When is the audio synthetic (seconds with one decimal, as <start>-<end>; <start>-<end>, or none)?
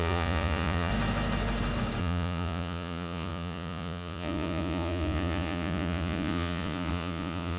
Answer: 0.0-0.9; 2.0-7.6